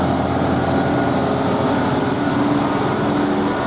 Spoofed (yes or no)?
no